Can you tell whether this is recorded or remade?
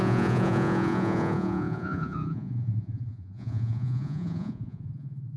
remade